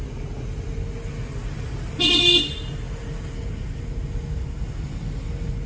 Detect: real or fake real